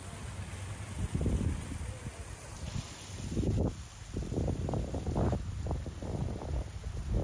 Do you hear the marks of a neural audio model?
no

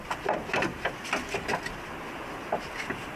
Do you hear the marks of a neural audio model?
no